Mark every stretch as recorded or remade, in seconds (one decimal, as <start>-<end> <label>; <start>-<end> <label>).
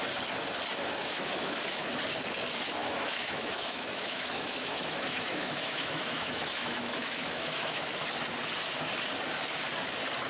0.0-1.0 recorded; 1.0-1.9 remade; 1.9-2.8 recorded; 2.8-7.9 remade; 7.9-10.3 recorded